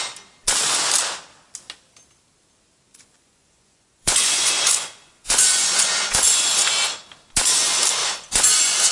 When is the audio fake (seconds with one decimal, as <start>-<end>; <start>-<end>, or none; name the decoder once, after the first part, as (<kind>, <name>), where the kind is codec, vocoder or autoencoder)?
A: 2.9-6.9 (vocoder, Vocos); 8.0-8.9